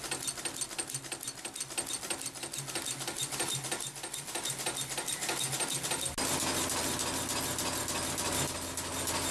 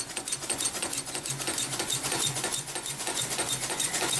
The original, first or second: first